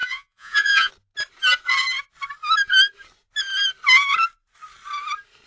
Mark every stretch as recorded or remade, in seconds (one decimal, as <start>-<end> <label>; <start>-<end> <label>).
0.0-0.9 remade; 0.9-5.5 recorded

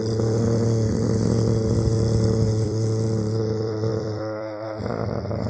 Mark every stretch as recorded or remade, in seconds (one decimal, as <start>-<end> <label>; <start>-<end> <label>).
0.0-5.5 remade

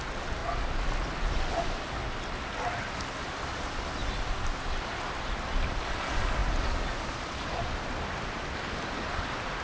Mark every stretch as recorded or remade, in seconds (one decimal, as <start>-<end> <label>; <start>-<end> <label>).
0.0-9.6 recorded